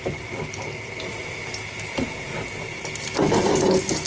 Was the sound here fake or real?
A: real